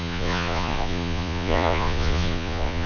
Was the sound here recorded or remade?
remade